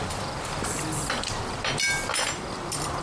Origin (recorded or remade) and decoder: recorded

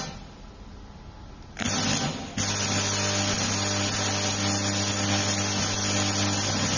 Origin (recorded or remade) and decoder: recorded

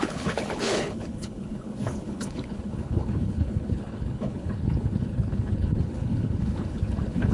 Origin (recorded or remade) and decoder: remade, codec, HILCodec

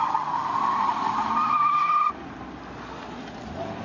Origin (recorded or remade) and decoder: recorded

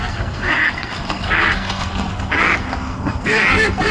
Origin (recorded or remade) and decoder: remade, codec, SNAC